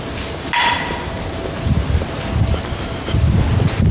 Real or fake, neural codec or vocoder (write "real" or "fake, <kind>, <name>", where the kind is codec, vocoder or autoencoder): real